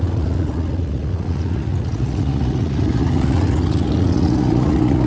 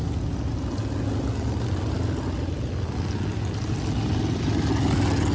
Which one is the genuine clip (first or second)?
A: second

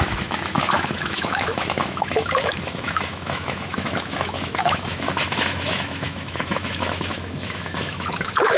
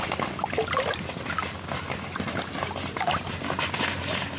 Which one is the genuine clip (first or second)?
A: second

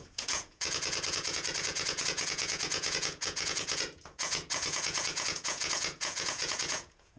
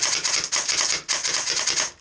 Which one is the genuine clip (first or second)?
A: second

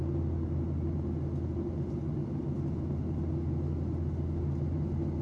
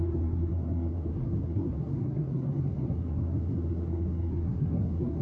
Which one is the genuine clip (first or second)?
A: first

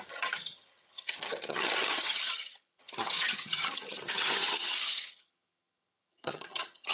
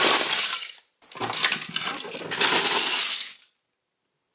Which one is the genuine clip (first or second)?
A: second